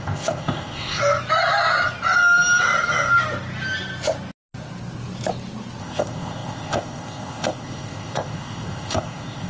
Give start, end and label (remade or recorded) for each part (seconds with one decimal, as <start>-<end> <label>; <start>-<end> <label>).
0.0-1.0 remade; 1.0-5.8 recorded; 5.8-9.5 remade